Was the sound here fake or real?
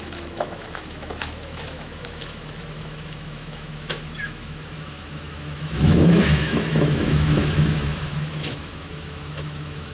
fake